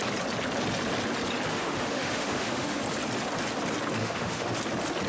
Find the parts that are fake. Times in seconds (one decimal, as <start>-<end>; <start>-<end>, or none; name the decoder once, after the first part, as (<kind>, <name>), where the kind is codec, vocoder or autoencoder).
1.5-2.8 (autoencoder, DAC-VAE); 4.0-4.5